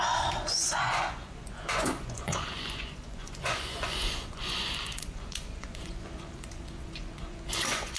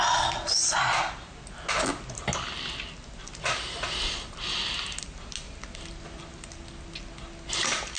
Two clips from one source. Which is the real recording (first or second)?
second